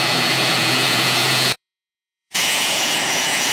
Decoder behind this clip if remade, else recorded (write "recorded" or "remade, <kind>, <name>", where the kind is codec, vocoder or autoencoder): remade, vocoder, Vocos